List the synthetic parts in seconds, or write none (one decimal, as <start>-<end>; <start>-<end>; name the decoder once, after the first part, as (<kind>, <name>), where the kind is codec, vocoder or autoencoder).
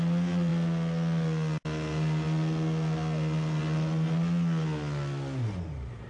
none